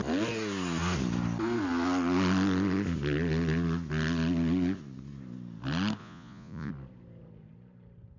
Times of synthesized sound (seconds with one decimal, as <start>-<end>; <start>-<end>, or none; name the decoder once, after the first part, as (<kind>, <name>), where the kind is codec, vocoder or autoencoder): 6.0-6.7 (vocoder, Vocos)